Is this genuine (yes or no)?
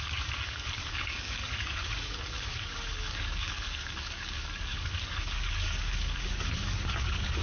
no